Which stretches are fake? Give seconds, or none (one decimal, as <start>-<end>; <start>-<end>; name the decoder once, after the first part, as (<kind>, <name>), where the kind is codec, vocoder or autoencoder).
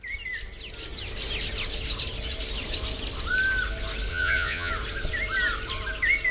4.1-4.7 (vocoder, Vocos)